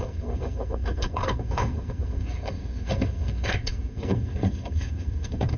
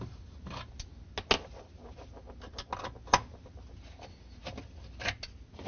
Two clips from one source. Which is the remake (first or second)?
first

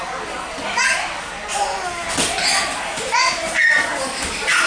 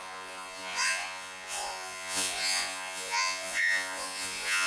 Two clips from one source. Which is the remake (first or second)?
second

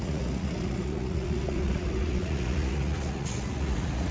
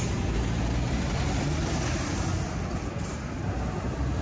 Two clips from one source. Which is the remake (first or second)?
first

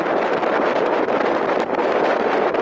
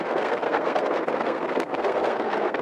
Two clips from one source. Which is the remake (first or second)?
second